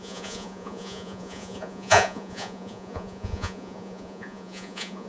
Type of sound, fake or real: fake